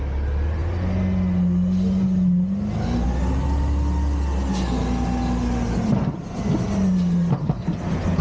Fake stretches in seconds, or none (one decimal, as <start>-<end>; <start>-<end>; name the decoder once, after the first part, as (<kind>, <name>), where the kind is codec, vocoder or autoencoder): none